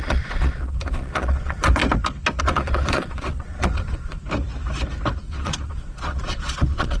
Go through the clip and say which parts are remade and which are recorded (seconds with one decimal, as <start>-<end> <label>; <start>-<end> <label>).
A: 0.0-1.8 remade; 1.8-2.4 recorded; 2.4-4.2 remade; 4.2-5.2 recorded; 5.2-7.0 remade

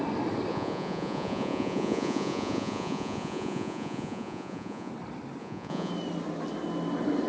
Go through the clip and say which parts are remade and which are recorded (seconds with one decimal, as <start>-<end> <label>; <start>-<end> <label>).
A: 0.0-0.5 recorded; 0.5-4.9 remade; 4.9-5.4 recorded; 5.4-5.9 remade; 5.9-7.3 recorded

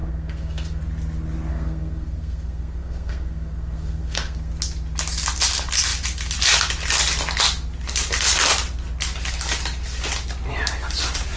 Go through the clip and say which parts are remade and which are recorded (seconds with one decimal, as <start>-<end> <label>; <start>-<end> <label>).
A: 0.0-0.8 remade; 0.8-1.5 recorded; 1.5-4.5 remade; 4.5-11.4 recorded

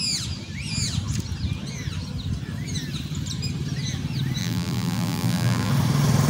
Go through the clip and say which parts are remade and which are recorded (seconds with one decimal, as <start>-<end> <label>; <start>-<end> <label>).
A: 0.0-4.4 recorded; 4.4-5.7 remade; 5.7-6.3 recorded

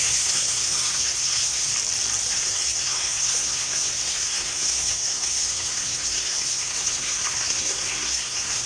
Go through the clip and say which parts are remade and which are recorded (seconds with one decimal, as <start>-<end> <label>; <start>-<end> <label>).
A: 0.0-1.7 remade; 1.7-2.3 recorded; 2.3-8.7 remade

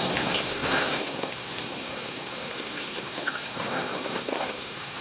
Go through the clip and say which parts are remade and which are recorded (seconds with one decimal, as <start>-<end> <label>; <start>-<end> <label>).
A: 0.0-5.0 remade

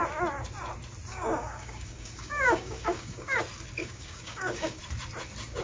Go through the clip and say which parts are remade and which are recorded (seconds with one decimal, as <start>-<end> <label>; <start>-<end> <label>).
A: 0.0-1.1 recorded; 1.1-3.4 remade; 3.4-3.8 recorded; 3.8-4.8 remade; 4.8-5.6 recorded